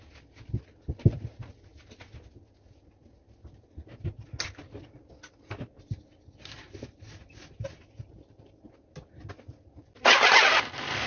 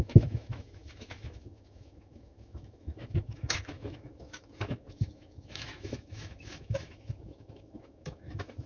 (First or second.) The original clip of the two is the first